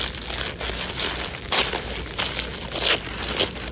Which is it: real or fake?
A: real